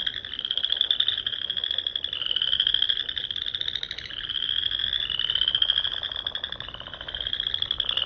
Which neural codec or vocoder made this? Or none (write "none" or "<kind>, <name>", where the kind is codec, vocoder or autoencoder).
none